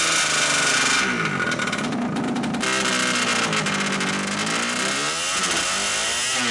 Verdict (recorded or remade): recorded